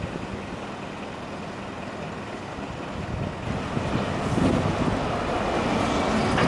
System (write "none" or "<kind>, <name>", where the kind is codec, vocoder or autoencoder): none